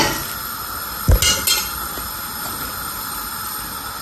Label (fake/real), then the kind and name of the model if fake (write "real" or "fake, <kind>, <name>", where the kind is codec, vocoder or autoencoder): real